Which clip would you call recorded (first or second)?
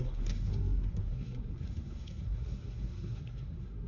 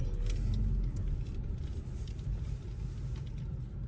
second